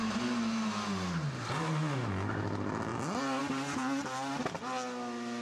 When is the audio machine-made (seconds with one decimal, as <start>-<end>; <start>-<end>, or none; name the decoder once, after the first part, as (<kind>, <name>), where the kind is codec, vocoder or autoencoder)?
none